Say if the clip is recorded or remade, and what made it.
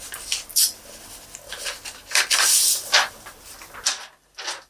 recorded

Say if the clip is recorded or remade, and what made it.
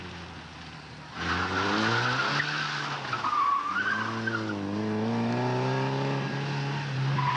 recorded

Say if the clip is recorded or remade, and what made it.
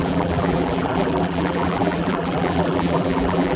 remade, vocoder, BigVGAN v2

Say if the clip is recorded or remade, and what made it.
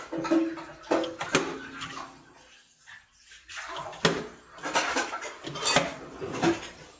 recorded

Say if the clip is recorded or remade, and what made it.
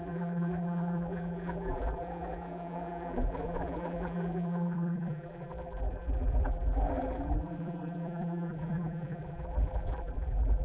remade, vocoder, BigVGAN v2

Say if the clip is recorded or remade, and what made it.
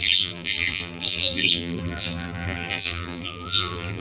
remade, vocoder, BigVGAN v2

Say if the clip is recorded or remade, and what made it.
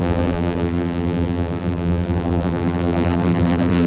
remade, vocoder, BigVGAN v2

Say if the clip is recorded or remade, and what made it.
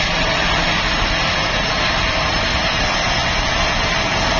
recorded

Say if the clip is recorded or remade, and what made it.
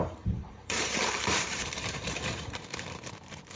remade, vocoder, BigVGAN v2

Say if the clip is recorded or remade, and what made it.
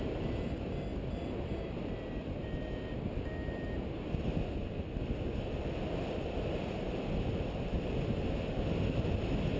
recorded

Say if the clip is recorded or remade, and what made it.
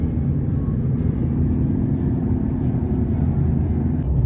recorded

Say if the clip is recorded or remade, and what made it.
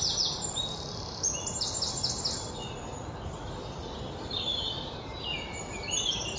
remade, vocoder, BigVGAN v2